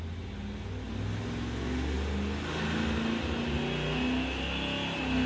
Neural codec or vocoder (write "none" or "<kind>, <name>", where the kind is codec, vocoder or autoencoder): none